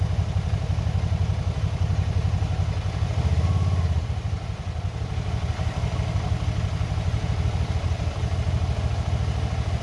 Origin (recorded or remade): recorded